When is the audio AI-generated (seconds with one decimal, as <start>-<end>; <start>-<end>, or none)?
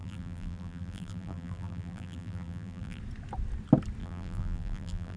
0.0-3.0; 4.0-5.2